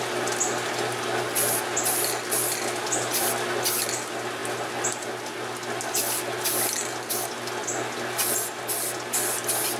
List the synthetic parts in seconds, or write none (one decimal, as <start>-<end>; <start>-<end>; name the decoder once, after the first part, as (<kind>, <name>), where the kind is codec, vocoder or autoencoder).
none